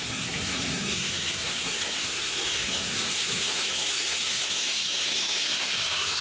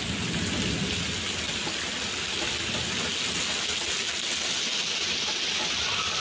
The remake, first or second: first